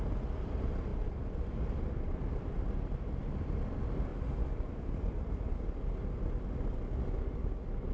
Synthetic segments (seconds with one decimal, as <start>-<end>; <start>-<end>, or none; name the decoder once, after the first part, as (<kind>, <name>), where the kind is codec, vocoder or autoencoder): 0.9-1.5 (vocoder, BigVGAN v2); 4.1-5.3